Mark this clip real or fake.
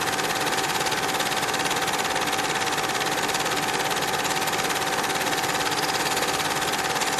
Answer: real